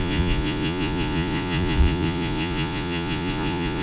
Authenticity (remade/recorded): remade